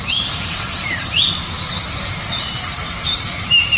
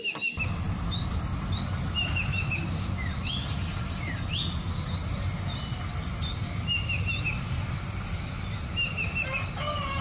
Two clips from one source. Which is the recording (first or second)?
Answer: second